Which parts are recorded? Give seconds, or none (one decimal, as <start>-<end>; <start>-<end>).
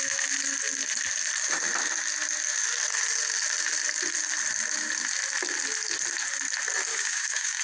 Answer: 0.0-6.9